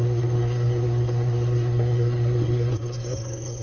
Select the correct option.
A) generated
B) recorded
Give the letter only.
A